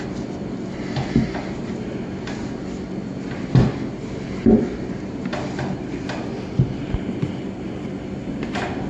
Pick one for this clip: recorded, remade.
recorded